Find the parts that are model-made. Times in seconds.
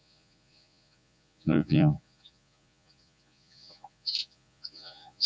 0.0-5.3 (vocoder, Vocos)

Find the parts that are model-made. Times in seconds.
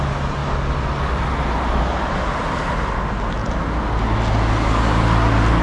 none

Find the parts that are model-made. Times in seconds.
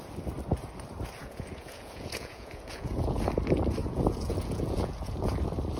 1.2-3.2 (vocoder, Vocos); 3.8-5.3